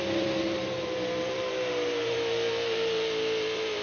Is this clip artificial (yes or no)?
yes